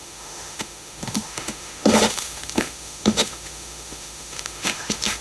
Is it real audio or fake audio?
fake